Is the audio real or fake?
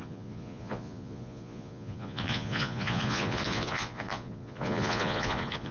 fake